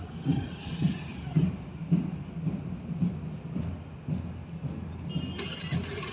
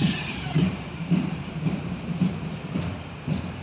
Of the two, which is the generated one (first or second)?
second